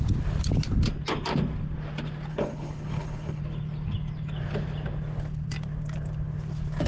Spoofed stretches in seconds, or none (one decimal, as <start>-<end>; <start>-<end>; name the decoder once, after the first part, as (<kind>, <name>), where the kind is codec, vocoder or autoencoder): 2.3-3.4 (codec, HILCodec)